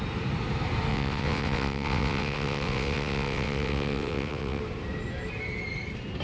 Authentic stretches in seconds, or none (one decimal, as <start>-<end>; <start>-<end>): 0.0-0.9; 4.6-6.2